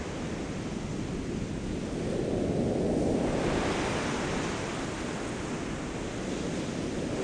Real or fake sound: real